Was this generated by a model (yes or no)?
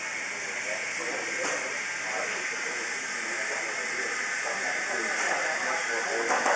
no